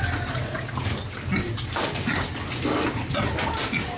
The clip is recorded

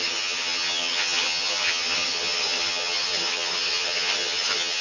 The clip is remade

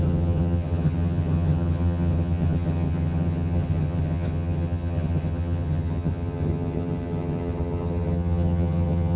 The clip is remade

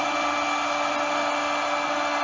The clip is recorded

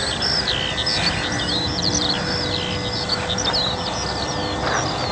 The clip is recorded